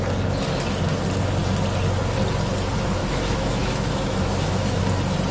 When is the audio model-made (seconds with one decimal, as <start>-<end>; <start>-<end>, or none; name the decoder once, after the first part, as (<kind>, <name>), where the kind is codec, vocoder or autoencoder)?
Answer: 3.0-4.8 (autoencoder, DAC-VAE)